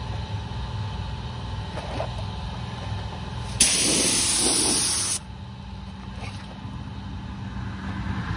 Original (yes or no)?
yes